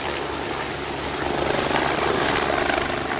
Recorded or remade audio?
recorded